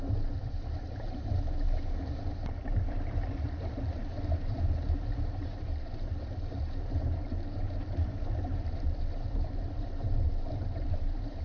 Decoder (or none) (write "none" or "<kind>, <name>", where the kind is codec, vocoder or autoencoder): vocoder, BigVGAN v2